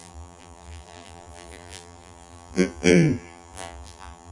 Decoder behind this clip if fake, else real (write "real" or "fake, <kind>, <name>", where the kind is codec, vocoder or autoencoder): fake, vocoder, BigVGAN v2